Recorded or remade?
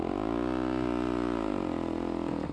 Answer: recorded